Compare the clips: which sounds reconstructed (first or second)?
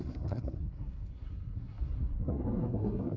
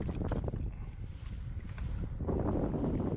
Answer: first